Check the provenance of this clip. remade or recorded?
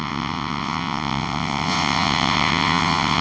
remade